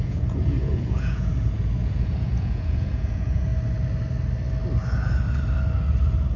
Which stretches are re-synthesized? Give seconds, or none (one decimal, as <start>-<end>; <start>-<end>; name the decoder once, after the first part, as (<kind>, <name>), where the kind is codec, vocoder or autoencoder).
0.0-1.3 (vocoder, Vocos); 1.8-3.5